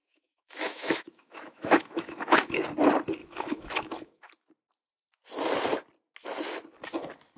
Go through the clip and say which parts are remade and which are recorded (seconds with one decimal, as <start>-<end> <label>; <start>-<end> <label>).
0.0-2.5 remade; 2.5-3.2 recorded; 3.2-4.3 remade; 4.3-7.4 recorded